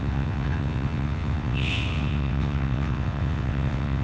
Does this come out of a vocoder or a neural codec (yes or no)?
yes